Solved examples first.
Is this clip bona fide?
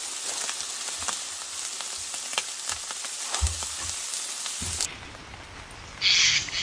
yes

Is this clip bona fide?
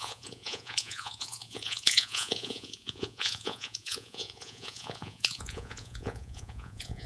no